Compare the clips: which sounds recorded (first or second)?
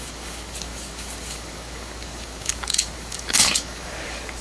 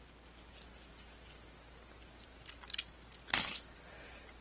second